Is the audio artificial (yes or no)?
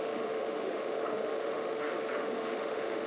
yes